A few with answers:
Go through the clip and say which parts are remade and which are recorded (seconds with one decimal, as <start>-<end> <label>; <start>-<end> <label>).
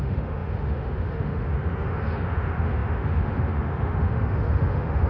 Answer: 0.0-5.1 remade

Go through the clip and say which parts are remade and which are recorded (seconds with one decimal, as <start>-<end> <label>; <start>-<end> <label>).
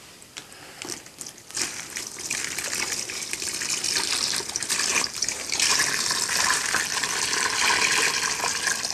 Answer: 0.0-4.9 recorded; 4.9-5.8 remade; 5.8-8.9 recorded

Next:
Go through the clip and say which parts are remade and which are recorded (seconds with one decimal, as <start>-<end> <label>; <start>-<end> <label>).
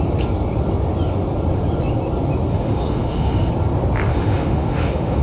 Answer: 0.0-2.5 recorded; 2.5-3.5 remade; 3.5-4.1 recorded; 4.1-5.2 remade